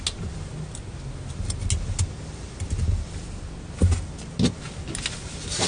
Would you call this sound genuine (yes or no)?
yes